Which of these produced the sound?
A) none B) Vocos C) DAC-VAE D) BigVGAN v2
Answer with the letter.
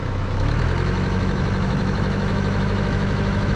C